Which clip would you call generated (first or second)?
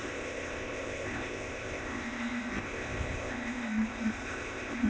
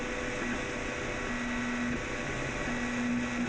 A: first